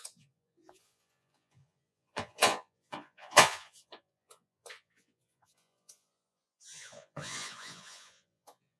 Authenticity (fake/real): fake